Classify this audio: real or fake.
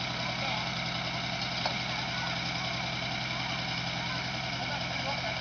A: real